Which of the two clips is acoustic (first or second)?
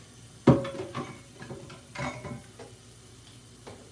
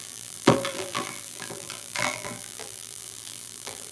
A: first